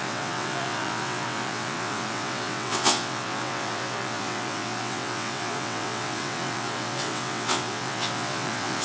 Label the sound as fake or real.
fake